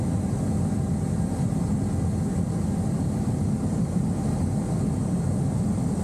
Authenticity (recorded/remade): recorded